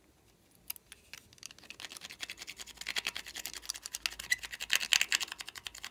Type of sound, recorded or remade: recorded